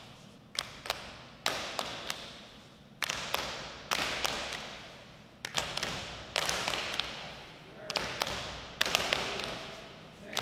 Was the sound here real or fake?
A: real